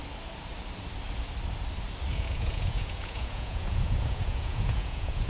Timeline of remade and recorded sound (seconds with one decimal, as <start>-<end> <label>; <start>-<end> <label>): 0.0-2.1 recorded; 2.1-5.3 remade